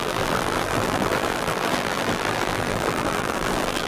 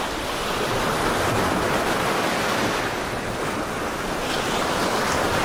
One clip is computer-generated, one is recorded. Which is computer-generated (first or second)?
first